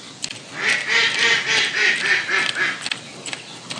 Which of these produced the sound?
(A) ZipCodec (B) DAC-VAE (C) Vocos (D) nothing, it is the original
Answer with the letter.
D